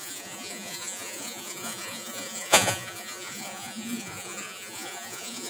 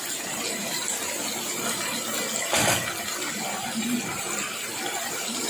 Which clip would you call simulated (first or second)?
first